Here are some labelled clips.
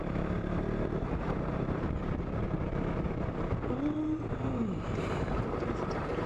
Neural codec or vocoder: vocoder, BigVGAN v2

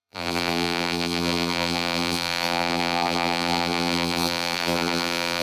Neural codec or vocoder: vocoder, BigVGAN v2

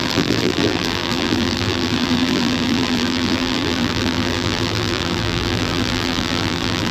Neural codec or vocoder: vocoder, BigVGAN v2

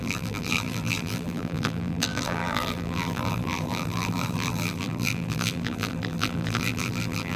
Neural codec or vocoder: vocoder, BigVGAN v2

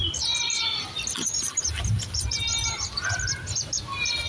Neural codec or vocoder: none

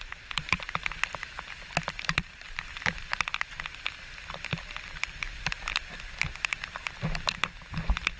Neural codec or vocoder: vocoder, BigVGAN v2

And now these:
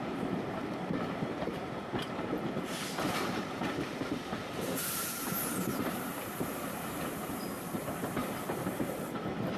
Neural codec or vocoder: vocoder, BigVGAN v2